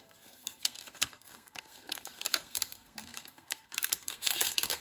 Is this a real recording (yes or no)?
no